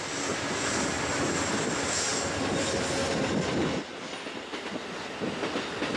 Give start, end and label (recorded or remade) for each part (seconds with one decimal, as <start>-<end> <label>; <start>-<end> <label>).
0.0-6.0 recorded